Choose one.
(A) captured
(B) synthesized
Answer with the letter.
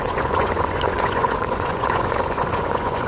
B